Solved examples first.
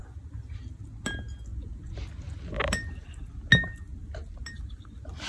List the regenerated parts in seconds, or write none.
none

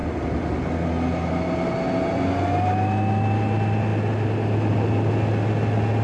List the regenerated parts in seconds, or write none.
none

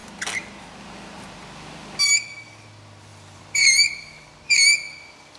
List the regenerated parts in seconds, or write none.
3.1-4.4 (vocoder, BigVGAN v2)

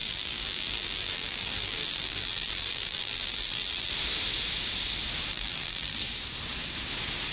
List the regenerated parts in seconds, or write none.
0.0-3.9 (vocoder, BigVGAN v2); 5.3-6.0

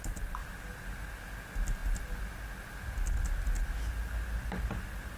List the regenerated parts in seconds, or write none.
0.4-1.1 (vocoder, BigVGAN v2)

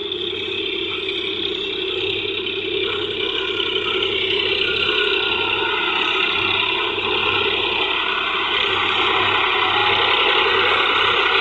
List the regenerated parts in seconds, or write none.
0.0-0.6 (vocoder, BigVGAN v2); 7.2-8.7

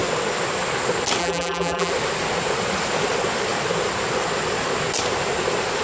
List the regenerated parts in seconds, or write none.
1.2-1.9 (vocoder, BigVGAN v2)